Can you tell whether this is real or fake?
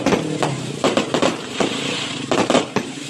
fake